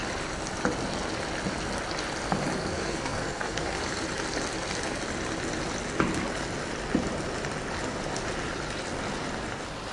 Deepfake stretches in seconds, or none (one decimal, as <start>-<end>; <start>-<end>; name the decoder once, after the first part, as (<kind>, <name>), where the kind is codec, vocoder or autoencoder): 2.6-3.8 (codec, SNAC)